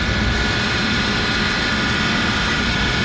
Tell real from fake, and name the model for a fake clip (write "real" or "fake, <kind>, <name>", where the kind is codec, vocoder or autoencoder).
real